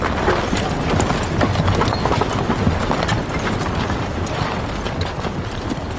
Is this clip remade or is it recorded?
recorded